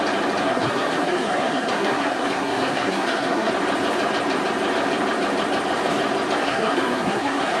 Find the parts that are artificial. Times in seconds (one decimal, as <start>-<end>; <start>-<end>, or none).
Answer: 0.4-3.5; 6.4-7.6

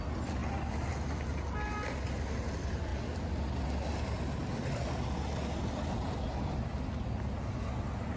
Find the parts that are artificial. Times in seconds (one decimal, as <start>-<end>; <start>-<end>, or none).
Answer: none

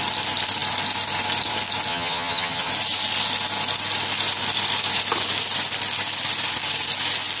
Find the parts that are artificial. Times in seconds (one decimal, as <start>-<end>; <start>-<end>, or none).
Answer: 1.9-2.7

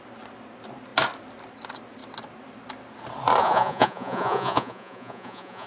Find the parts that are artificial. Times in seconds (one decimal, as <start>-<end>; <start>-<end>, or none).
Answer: 3.4-5.7

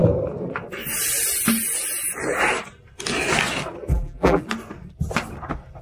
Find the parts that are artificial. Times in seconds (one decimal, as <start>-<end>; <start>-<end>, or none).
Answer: 3.9-4.4

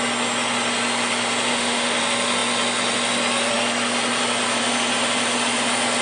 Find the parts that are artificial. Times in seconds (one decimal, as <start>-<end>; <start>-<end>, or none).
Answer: 1.5-2.0